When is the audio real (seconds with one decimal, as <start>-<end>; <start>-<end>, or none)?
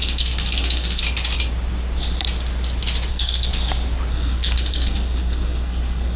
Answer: 1.0-3.1; 3.5-4.1